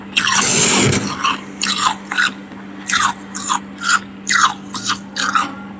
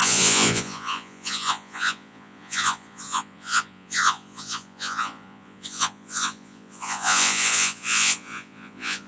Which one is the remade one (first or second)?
second